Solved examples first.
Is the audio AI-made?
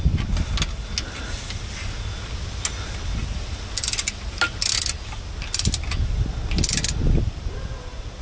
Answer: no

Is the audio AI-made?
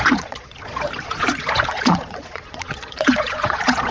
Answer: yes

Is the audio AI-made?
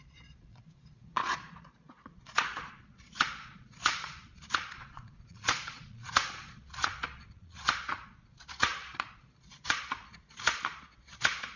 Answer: yes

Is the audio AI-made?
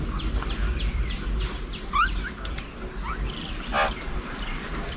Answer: no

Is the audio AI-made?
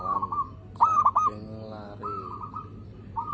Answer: no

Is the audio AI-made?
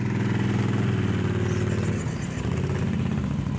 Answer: no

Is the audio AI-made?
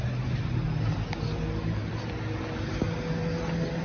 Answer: no